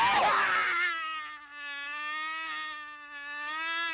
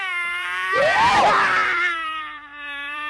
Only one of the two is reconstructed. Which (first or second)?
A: second